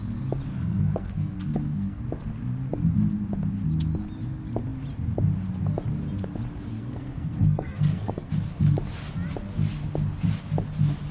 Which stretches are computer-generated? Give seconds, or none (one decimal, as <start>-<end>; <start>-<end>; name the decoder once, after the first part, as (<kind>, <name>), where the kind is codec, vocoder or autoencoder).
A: 0.5-2.0 (codec, SNAC); 6.7-8.3